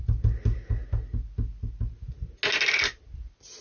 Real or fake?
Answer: real